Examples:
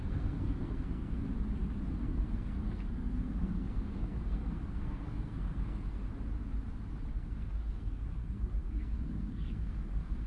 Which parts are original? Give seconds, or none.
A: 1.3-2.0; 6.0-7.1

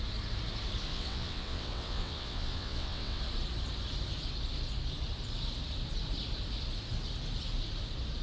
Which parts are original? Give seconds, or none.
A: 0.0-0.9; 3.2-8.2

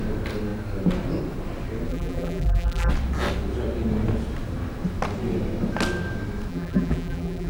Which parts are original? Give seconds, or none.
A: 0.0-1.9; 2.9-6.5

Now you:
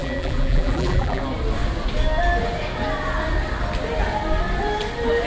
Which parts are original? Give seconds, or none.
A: 1.2-5.3